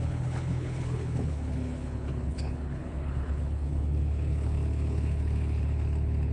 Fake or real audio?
fake